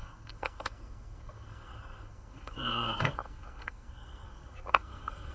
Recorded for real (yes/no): no